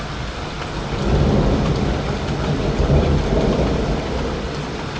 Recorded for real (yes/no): yes